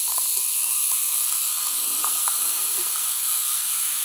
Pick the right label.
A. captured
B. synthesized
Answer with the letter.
B